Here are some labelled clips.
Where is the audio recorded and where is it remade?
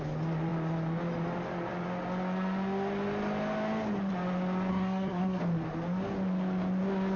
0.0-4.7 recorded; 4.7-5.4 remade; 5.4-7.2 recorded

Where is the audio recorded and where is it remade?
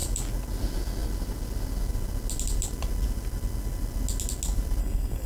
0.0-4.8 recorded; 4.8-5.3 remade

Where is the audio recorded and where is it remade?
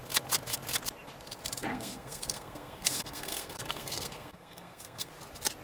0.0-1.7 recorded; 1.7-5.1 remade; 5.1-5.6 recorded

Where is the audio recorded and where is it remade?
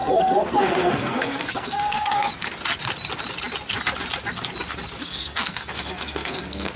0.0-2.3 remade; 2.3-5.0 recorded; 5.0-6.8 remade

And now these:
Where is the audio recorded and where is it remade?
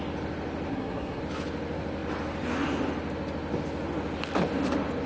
0.0-0.7 recorded; 0.7-1.2 remade; 1.2-5.1 recorded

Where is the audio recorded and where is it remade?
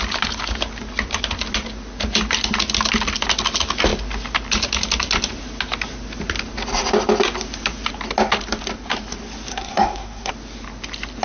0.0-9.5 recorded; 9.5-10.3 remade; 10.3-11.2 recorded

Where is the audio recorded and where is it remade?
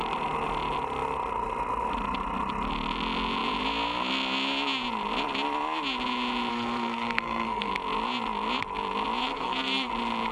0.0-6.5 recorded; 6.5-7.7 remade; 7.7-9.2 recorded; 9.2-9.9 remade; 9.9-10.3 recorded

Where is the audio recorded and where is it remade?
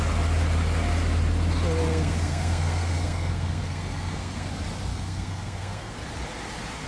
0.0-1.9 recorded; 1.9-4.5 remade; 4.5-4.9 recorded; 4.9-5.9 remade; 5.9-6.9 recorded